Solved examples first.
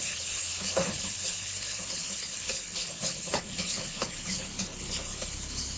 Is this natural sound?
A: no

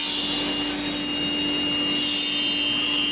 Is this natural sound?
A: yes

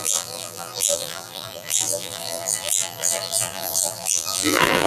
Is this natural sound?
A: no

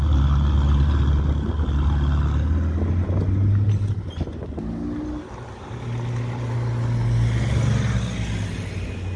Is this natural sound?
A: yes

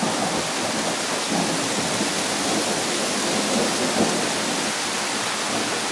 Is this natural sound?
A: yes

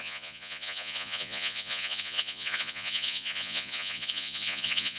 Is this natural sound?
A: no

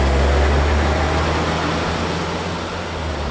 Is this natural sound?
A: yes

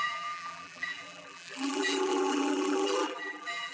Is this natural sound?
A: no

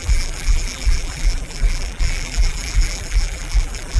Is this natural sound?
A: no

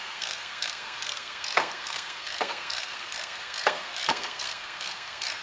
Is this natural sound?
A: no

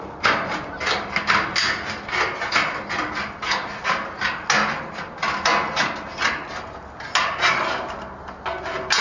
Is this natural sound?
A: yes